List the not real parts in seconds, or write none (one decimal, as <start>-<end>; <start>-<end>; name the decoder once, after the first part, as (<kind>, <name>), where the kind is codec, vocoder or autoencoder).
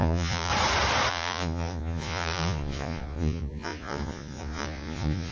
0.0-0.5 (vocoder, Vocos); 1.1-5.3